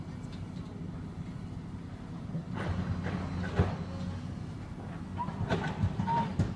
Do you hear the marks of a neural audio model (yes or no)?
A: no